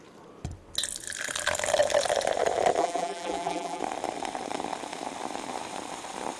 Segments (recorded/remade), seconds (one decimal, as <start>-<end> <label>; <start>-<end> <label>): 0.0-2.8 recorded; 2.8-3.8 remade; 3.8-6.4 recorded